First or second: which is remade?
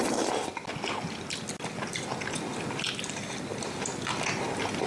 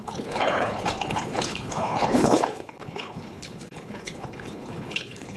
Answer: second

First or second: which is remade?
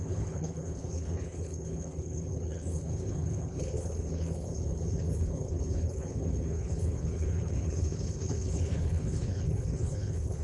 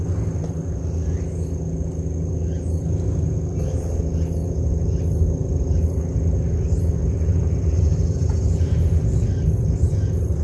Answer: first